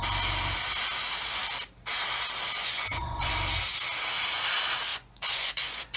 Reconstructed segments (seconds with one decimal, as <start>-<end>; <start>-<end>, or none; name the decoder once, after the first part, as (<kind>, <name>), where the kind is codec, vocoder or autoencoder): 2.6-3.3 (vocoder, Vocos); 4.9-6.0